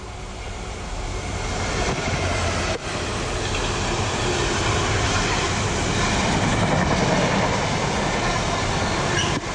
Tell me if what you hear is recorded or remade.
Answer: recorded